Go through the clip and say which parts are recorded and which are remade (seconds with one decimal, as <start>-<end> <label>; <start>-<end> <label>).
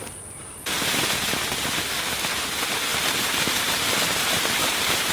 0.0-2.9 recorded; 2.9-5.1 remade